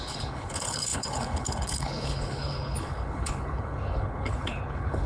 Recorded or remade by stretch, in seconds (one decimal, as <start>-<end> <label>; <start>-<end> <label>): 0.0-5.1 remade